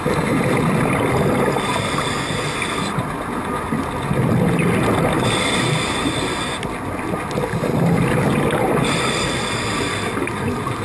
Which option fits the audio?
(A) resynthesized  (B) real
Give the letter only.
B